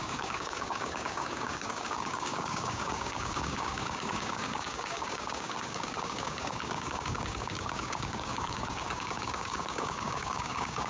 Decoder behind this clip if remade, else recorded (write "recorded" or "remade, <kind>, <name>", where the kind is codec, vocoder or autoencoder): remade, codec, DAC